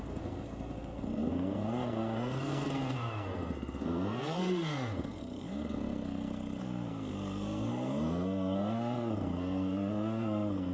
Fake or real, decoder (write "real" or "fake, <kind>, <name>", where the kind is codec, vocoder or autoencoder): fake, codec, SNAC